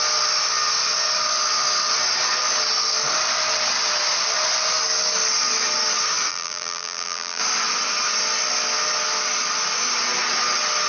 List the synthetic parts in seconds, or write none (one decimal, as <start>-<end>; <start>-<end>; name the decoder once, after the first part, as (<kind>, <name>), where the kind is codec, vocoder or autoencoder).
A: 6.3-7.4 (vocoder, BigVGAN v2)